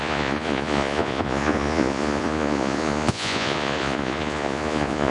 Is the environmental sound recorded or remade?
remade